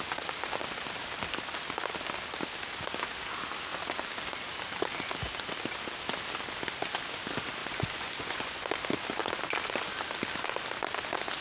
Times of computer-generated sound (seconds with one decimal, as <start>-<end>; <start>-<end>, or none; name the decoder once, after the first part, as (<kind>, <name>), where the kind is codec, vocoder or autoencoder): 7.6-8.6 (vocoder, Vocos)